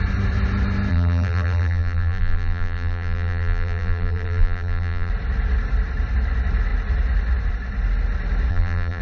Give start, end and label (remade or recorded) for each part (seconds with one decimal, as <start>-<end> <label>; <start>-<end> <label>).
0.0-0.9 recorded; 0.9-5.1 remade; 5.1-8.5 recorded; 8.5-9.0 remade